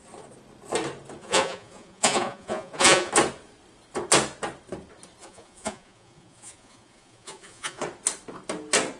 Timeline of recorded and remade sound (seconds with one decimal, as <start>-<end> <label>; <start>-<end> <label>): 0.0-1.2 recorded; 1.2-3.1 remade; 3.1-5.2 recorded; 5.2-7.8 remade; 7.8-9.0 recorded